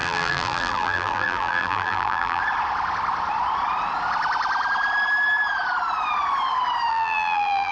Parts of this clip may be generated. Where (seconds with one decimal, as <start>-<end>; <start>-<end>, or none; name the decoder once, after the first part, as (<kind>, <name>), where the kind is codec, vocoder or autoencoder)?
0.0-2.4 (vocoder, BigVGAN v2); 6.9-7.7